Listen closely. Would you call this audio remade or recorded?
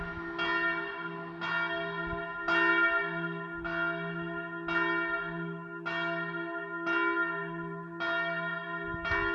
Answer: recorded